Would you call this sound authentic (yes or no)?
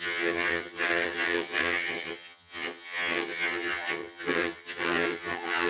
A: no